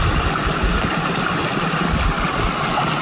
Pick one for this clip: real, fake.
real